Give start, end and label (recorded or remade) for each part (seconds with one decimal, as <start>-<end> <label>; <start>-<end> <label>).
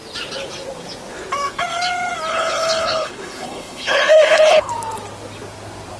0.0-2.3 recorded; 2.3-4.7 remade; 4.7-6.0 recorded